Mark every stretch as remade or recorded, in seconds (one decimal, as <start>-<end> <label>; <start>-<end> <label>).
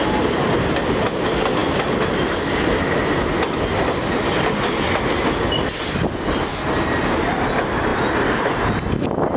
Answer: 0.0-7.9 recorded; 7.9-8.6 remade; 8.6-9.4 recorded